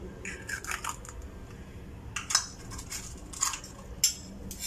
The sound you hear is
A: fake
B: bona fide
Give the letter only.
B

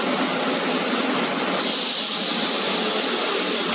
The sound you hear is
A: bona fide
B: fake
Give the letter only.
A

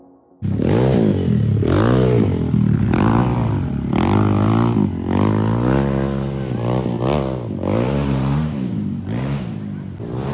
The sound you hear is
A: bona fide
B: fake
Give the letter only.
A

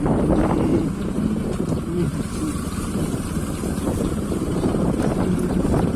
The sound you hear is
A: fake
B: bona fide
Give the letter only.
A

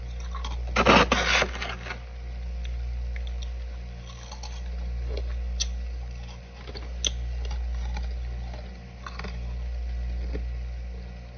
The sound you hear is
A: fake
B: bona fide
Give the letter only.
B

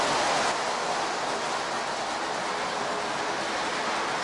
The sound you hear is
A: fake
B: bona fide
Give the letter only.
B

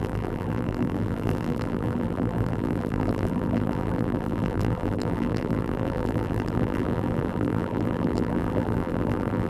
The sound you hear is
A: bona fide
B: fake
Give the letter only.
B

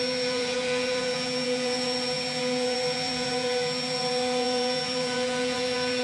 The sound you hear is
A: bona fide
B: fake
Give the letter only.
B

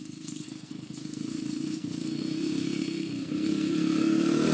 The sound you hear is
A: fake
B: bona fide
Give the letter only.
A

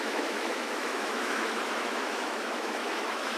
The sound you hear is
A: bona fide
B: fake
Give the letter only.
B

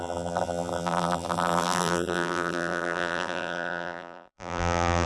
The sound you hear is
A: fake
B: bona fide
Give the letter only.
A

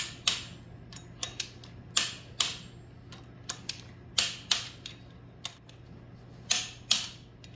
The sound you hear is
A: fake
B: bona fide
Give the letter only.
B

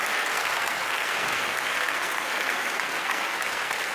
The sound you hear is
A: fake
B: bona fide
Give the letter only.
A